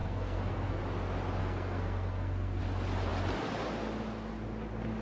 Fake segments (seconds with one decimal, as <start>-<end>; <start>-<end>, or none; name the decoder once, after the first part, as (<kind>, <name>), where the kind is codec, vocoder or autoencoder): 0.0-0.8 (codec, SNAC); 1.4-2.6